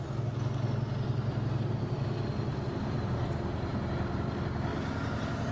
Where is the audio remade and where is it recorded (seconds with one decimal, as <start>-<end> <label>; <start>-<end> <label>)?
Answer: 0.0-2.5 recorded; 2.5-3.3 remade; 3.3-4.7 recorded; 4.7-5.5 remade